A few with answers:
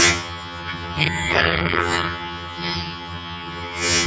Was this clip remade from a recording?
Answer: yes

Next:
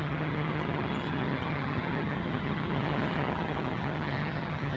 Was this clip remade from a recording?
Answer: yes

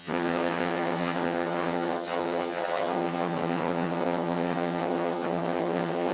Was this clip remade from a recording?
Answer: yes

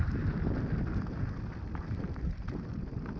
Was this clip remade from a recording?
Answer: no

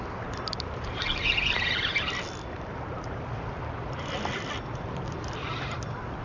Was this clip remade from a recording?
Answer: no